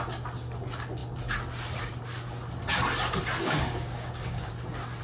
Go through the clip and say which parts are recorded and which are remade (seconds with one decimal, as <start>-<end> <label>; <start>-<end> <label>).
0.0-3.4 recorded; 3.4-4.5 remade; 4.5-5.0 recorded